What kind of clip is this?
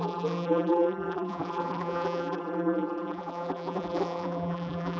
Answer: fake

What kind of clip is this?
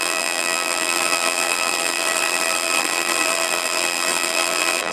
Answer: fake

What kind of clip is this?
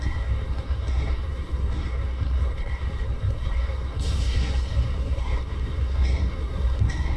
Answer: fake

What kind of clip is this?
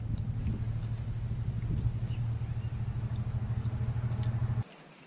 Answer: real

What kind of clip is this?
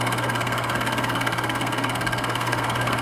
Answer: fake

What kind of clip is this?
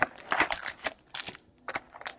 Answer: real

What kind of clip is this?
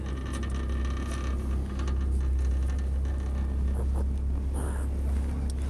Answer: real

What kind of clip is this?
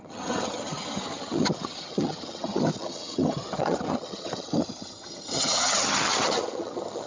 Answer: fake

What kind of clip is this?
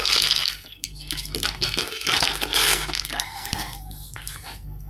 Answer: fake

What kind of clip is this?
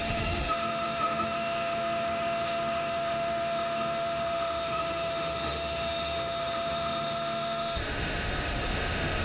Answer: fake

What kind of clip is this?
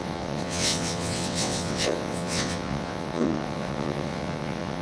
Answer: fake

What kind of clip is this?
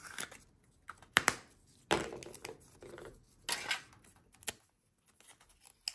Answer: real